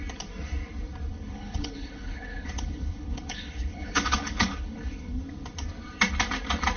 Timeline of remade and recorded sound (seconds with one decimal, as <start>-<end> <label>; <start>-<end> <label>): 0.0-1.1 recorded; 1.1-5.2 remade; 5.2-6.8 recorded